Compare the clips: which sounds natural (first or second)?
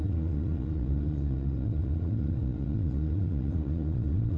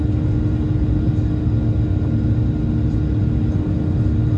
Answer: second